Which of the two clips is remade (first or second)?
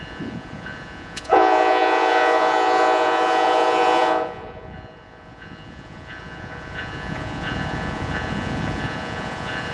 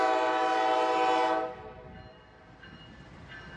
first